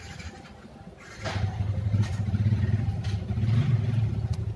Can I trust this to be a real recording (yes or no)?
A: yes